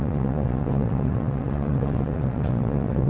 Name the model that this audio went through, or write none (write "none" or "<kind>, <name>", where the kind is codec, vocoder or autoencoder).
vocoder, WaveNeXt